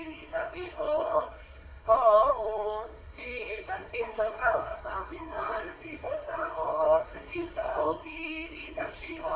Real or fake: fake